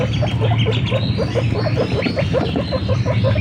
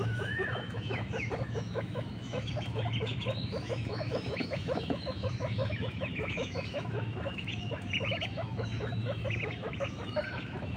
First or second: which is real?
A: first